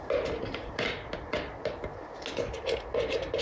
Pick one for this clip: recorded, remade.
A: recorded